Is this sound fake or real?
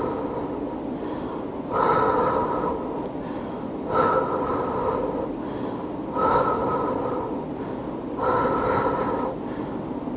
real